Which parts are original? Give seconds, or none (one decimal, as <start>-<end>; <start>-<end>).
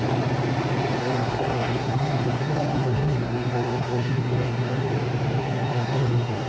0.0-1.0; 4.9-5.4